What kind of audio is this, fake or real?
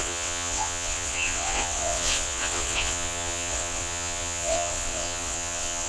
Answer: fake